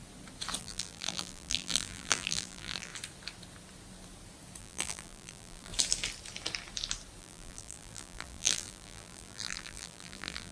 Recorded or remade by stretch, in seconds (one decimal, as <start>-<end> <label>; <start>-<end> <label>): 0.0-0.6 recorded; 0.6-2.9 remade; 2.9-4.6 recorded; 4.6-5.7 remade; 5.7-7.2 recorded; 7.2-10.5 remade